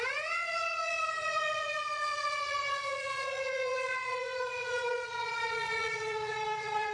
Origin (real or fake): fake